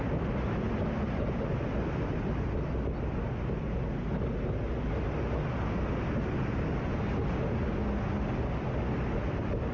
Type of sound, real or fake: real